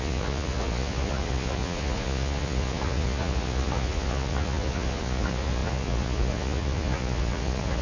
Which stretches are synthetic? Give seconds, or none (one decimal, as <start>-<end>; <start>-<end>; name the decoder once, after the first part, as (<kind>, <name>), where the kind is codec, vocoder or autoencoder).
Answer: 0.0-7.8 (vocoder, Vocos)